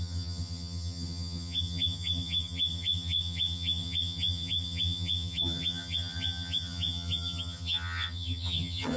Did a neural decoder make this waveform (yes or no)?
yes